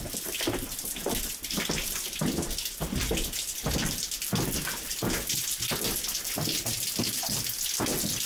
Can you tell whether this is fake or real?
real